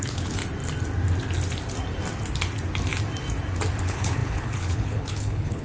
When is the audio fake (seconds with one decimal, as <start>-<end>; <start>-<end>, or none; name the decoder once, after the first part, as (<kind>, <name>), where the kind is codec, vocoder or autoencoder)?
0.0-0.4 (codec, HILCodec); 3.8-5.6